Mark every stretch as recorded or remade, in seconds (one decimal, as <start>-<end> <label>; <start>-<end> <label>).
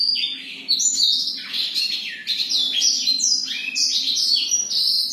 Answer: 0.0-0.9 recorded; 0.9-5.1 remade